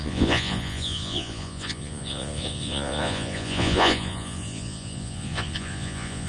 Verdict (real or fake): fake